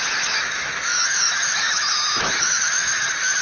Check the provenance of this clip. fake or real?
fake